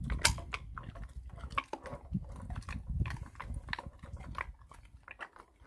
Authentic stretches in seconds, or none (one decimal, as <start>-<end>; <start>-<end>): 0.0-5.7